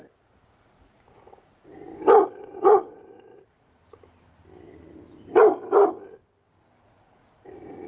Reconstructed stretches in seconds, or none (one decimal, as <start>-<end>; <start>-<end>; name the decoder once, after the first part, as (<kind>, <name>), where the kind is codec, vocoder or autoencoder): 0.0-1.9 (vocoder, Vocos); 2.4-3.8; 6.8-7.9